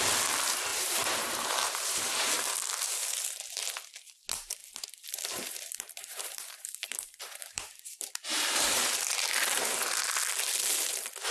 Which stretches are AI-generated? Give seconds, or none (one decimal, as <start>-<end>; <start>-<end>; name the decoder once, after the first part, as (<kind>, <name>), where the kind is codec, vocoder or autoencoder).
0.7-2.3 (vocoder, BigVGAN v2); 4.6-9.6